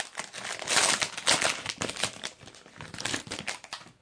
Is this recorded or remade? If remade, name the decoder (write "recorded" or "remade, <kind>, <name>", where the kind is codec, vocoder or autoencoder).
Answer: recorded